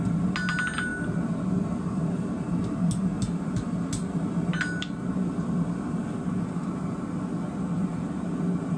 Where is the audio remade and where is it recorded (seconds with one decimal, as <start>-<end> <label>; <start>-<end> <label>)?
0.0-8.8 recorded